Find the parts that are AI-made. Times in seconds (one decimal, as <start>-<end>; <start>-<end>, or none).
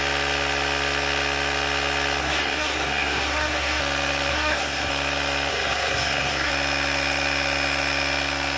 2.2-3.8; 4.3-4.9; 5.5-6.5